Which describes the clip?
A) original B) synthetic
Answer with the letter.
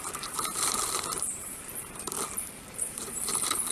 B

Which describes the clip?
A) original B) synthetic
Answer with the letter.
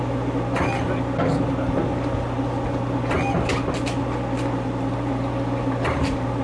A